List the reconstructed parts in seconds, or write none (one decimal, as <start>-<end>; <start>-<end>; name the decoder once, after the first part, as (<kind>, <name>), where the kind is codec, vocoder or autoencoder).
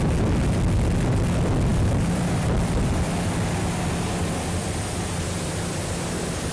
1.7-3.8 (vocoder, BigVGAN v2)